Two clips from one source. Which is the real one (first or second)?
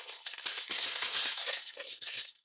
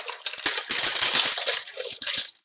second